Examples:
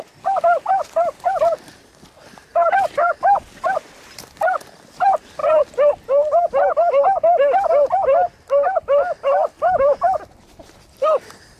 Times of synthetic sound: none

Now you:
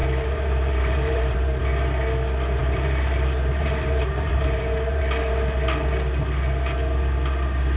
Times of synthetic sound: 0.0-1.6 (vocoder, BigVGAN v2); 2.6-5.0

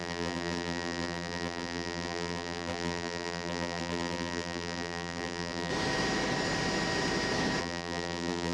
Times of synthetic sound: 0.0-5.7 (vocoder, BigVGAN v2); 7.6-8.5

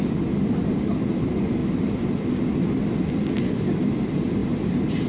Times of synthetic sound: 1.6-2.3 (vocoder, BigVGAN v2); 4.4-5.1

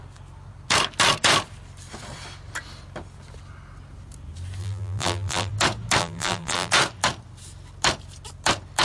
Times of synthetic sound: 4.6-5.5 (vocoder, BigVGAN v2); 6.0-6.7

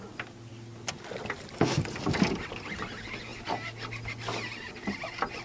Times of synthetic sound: none